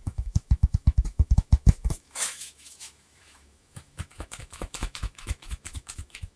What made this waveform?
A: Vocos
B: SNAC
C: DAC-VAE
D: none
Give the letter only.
C